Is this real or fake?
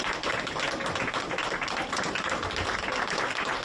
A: real